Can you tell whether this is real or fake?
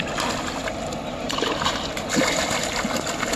real